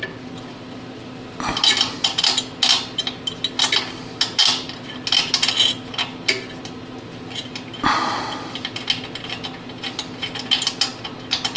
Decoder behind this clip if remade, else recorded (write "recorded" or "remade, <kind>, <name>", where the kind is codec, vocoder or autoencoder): recorded